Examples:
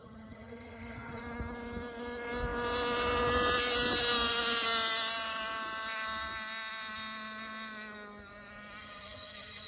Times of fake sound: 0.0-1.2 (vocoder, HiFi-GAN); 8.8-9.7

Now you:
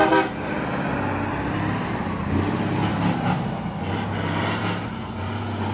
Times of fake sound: none

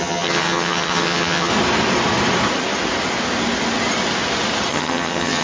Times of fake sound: 0.0-1.5 (vocoder, HiFi-GAN); 4.7-5.4

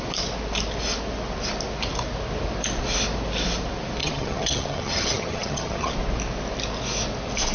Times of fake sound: 4.0-5.9 (vocoder, HiFi-GAN)

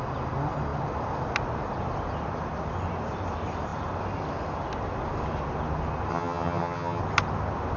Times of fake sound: 6.1-7.0 (vocoder, HiFi-GAN)

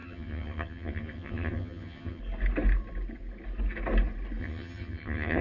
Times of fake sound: 0.0-2.2 (vocoder, HiFi-GAN); 4.4-5.4

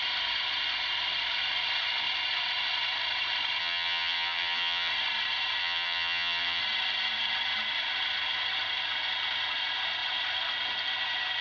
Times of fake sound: 3.6-4.9 (vocoder, HiFi-GAN); 5.6-6.6